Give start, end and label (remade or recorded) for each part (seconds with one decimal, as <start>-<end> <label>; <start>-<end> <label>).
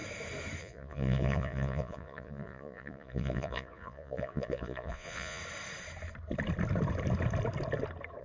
0.0-0.6 recorded; 0.6-5.4 remade; 5.4-8.2 recorded